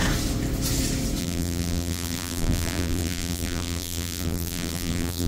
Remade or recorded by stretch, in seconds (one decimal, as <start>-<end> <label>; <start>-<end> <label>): 0.0-1.2 recorded; 1.2-5.3 remade

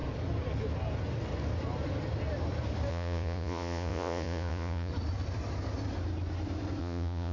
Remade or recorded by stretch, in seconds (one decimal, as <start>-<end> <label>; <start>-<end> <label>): 0.0-2.9 recorded; 2.9-4.9 remade; 4.9-6.8 recorded; 6.8-7.3 remade

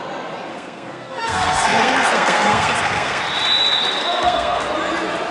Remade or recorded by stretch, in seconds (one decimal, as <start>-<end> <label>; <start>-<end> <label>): 0.0-0.5 recorded; 0.5-3.2 remade; 3.2-4.0 recorded; 4.0-4.6 remade; 4.6-5.3 recorded

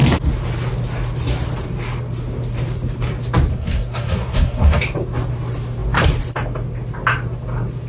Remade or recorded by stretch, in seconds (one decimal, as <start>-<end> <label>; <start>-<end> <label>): 0.0-3.5 recorded; 3.5-4.8 remade; 4.8-7.9 recorded